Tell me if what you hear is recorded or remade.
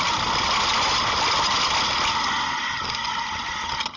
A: recorded